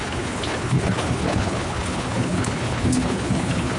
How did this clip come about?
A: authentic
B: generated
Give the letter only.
B